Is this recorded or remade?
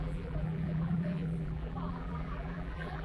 remade